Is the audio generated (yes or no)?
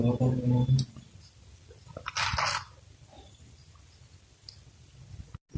no